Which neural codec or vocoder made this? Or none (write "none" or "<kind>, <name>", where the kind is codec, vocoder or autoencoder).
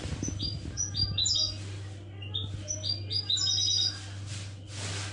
none